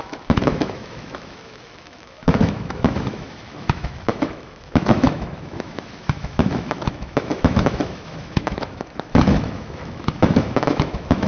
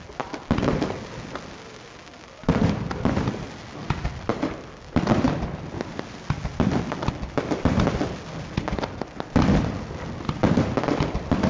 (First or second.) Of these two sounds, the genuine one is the second